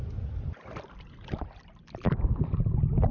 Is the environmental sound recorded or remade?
recorded